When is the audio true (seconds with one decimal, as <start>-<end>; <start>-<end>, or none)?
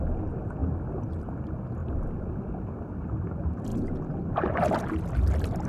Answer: 0.0-5.7